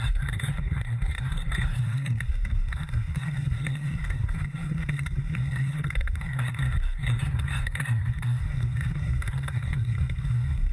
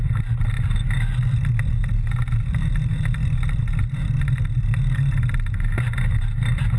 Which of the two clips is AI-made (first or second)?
first